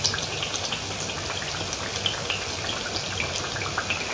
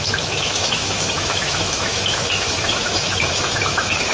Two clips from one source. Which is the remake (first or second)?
second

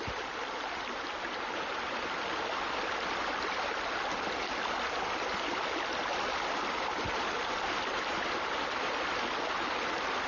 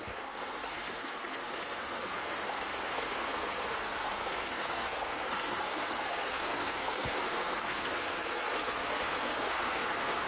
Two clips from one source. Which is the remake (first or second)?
second